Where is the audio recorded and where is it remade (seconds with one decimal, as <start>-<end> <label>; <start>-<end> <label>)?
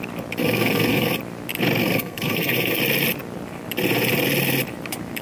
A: 0.0-0.4 recorded; 0.4-1.2 remade; 1.2-1.8 recorded; 1.8-2.8 remade; 2.8-5.2 recorded